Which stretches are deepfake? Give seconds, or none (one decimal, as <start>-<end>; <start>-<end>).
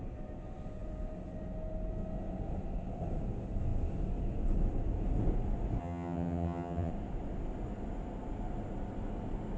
5.8-6.9